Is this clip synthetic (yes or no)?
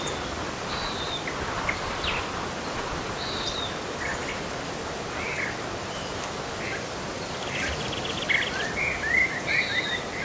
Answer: yes